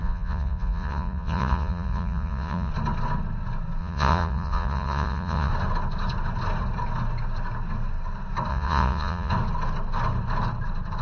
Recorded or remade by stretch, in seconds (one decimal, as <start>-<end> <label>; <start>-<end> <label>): 0.0-2.7 remade; 2.7-3.8 recorded; 3.8-5.5 remade; 5.5-8.5 recorded; 8.5-9.3 remade; 9.3-11.0 recorded